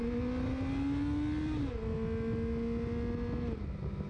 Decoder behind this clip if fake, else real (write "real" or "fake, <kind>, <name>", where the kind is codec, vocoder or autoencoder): real